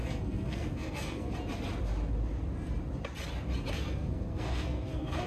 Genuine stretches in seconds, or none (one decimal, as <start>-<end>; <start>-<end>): 1.3-3.7

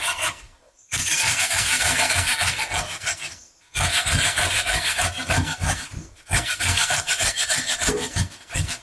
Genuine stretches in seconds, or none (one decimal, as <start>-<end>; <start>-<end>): none

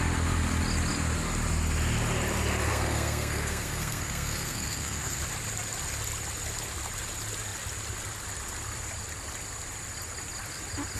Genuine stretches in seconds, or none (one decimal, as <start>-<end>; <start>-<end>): 0.0-2.7; 5.2-11.0